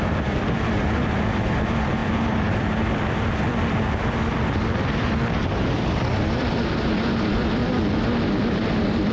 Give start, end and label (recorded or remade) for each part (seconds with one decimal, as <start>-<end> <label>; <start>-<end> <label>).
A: 0.0-7.6 remade; 7.6-8.5 recorded; 8.5-9.1 remade